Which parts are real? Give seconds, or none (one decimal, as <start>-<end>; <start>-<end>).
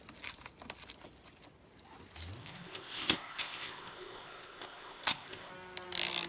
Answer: 0.0-2.4; 5.5-6.3